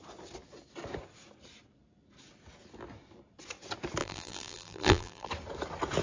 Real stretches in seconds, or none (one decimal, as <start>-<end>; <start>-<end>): 0.0-4.0; 5.3-6.0